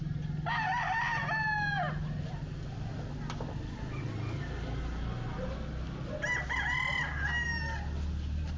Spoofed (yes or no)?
no